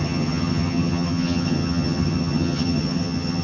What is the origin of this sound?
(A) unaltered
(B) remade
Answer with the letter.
B